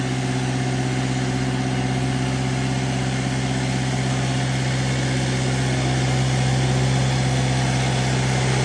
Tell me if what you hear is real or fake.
real